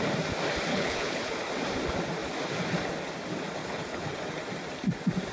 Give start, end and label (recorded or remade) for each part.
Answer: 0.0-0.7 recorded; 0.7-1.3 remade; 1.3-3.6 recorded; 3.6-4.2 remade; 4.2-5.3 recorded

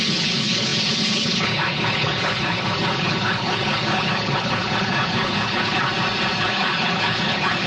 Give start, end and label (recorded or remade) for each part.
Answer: 0.0-5.9 remade; 5.9-6.4 recorded; 6.4-7.7 remade

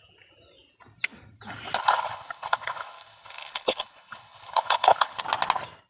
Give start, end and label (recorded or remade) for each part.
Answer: 0.0-1.8 recorded; 1.8-5.2 remade; 5.2-5.9 recorded

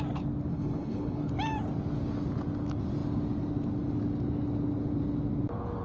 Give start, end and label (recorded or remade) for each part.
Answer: 0.0-0.5 recorded; 0.5-1.3 remade; 1.3-5.8 recorded

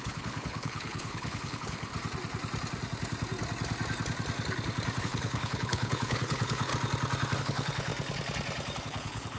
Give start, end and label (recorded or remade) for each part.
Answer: 0.0-1.9 remade; 1.9-5.0 recorded; 5.0-6.7 remade; 6.7-7.4 recorded; 7.4-7.9 remade; 7.9-8.8 recorded; 8.8-9.4 remade

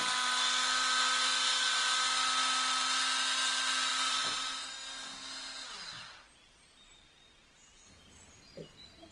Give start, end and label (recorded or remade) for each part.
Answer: 0.0-9.1 recorded

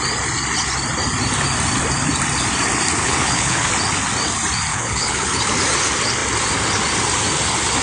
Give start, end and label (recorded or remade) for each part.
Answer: 0.0-3.0 recorded; 3.0-3.7 remade; 3.7-4.7 recorded; 4.7-5.4 remade; 5.4-7.8 recorded

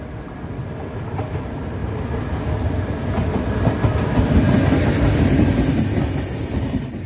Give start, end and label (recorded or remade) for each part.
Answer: 0.0-7.1 recorded